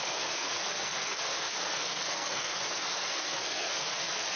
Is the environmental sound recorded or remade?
remade